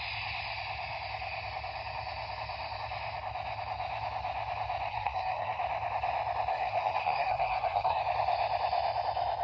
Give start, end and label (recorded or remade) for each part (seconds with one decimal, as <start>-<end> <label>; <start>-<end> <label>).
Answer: 0.0-4.9 recorded; 4.9-5.6 remade; 5.6-6.5 recorded; 6.5-8.0 remade; 8.0-9.4 recorded